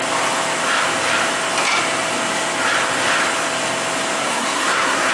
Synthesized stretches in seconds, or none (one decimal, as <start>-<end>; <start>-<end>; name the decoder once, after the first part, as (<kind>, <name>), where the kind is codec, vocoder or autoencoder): 4.2-5.1 (codec, SNAC)